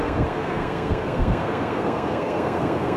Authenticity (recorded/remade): remade